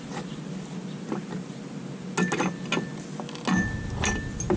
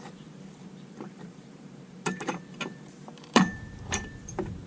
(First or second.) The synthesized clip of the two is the second